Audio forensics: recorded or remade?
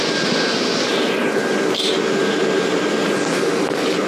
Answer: recorded